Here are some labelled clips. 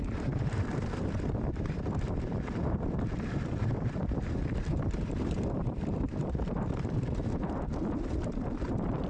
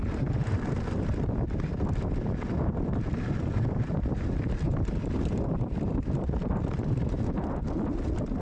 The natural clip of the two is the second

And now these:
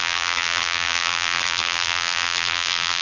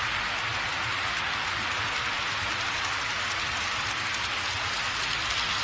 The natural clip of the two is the second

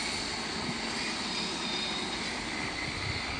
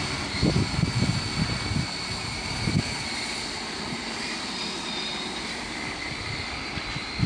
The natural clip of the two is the first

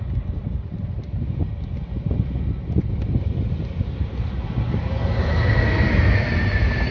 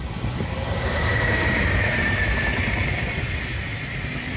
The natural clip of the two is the first